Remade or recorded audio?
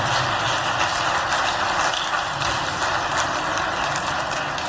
recorded